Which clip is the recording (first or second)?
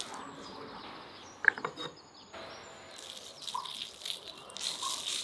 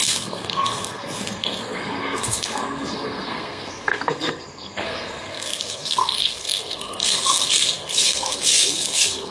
first